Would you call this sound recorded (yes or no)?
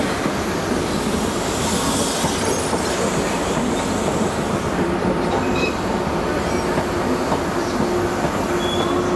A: yes